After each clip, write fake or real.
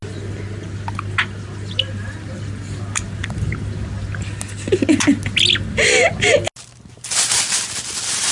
real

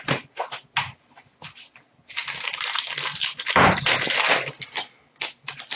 real